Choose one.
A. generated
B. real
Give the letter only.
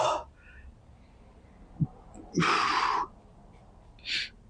B